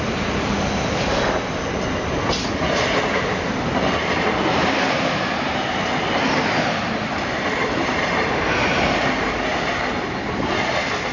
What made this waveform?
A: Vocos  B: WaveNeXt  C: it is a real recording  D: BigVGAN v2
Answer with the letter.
C